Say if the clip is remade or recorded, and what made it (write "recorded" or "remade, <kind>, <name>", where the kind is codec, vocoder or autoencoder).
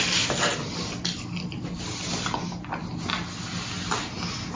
recorded